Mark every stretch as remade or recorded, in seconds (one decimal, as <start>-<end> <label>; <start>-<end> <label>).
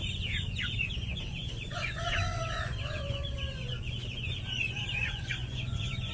0.0-6.1 remade